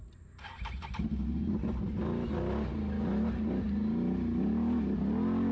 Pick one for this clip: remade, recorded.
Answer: recorded